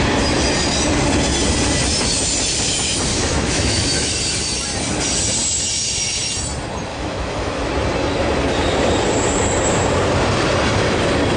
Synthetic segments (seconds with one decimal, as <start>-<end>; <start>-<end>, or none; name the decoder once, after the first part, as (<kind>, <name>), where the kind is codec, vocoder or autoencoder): 3.1-4.1 (autoencoder, DAC-VAE); 6.9-7.7